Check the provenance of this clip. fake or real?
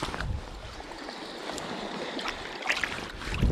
real